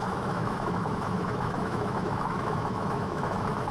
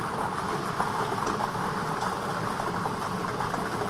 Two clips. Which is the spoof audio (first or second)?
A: first